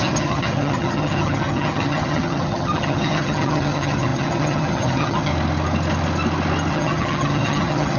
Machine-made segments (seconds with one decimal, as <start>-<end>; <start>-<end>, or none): 0.0-5.3; 6.7-8.0